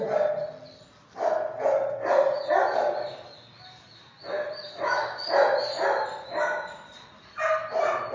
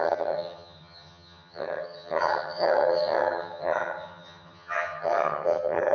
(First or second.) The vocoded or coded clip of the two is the second